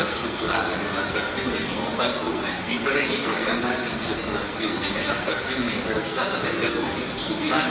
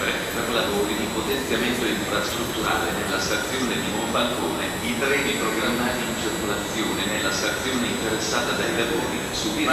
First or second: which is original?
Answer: second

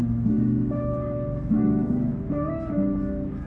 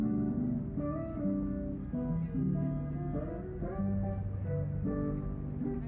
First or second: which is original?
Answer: second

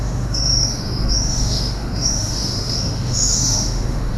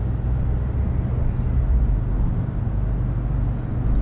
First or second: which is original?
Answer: second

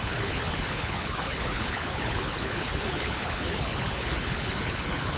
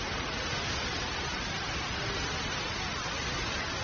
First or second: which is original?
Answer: second